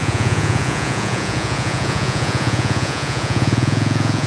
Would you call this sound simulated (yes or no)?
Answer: yes